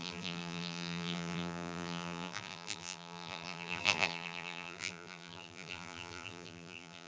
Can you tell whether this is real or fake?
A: fake